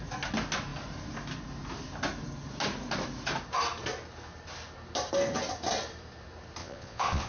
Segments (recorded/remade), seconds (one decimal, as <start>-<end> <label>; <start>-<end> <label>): 0.0-6.6 recorded; 6.6-7.3 remade

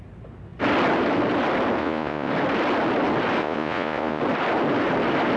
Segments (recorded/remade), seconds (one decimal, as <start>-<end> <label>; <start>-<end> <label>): 0.0-1.8 recorded; 1.8-2.3 remade; 2.3-3.4 recorded; 3.4-4.2 remade; 4.2-5.4 recorded